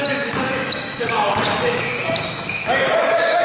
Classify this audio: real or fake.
fake